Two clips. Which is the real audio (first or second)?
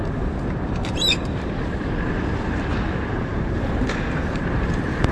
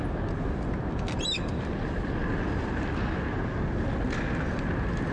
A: second